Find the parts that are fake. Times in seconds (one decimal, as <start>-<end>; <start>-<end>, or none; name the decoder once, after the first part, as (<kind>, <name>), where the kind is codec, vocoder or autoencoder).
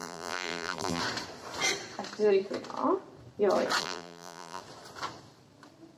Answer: 0.0-1.0 (vocoder, BigVGAN v2); 3.8-4.6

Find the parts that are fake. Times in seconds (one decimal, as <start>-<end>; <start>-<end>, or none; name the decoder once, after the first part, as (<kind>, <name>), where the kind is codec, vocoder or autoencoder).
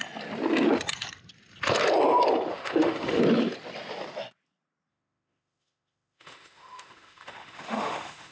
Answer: 2.5-3.2 (autoencoder, DAC-VAE); 4.9-8.3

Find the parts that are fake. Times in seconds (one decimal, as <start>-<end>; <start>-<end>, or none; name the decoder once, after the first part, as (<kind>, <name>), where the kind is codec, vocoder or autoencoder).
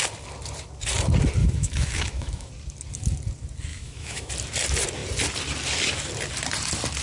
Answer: 1.4-2.5 (autoencoder, DAC-VAE); 3.7-4.3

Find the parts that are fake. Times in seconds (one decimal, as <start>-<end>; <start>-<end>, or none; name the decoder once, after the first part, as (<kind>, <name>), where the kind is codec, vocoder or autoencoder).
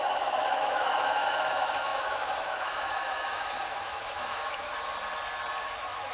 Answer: 0.0-4.9 (autoencoder, DAC-VAE); 5.6-6.1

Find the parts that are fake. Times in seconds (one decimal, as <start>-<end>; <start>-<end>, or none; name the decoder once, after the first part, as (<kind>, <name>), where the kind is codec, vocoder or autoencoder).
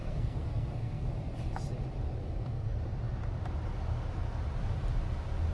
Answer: 0.0-1.1 (codec, SNAC); 2.2-2.8